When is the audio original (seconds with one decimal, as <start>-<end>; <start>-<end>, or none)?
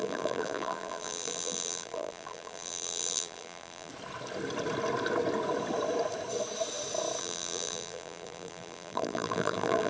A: 3.9-7.2